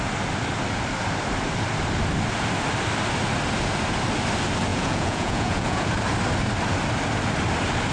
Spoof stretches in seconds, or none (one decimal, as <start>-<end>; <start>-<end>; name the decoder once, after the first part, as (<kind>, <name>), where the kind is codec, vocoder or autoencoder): 4.7-5.9 (vocoder, Vocos)

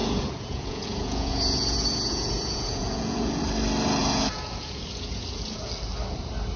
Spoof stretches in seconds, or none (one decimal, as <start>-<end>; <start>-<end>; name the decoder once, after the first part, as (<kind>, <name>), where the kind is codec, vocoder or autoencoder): 0.0-3.4 (vocoder, Vocos); 4.0-5.7

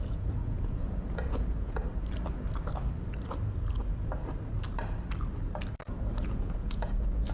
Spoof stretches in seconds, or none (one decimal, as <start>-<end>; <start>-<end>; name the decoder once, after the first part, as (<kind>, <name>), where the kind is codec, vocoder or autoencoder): 0.0-1.8 (vocoder, Vocos); 6.2-7.3

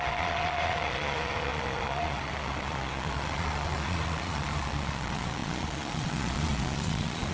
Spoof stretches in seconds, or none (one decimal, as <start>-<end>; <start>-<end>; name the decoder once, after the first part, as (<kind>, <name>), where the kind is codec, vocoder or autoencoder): 0.0-7.3 (vocoder, Vocos)

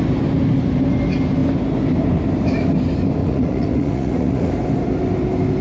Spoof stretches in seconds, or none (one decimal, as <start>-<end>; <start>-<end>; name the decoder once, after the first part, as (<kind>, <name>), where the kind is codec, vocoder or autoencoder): 3.2-4.5 (vocoder, Vocos)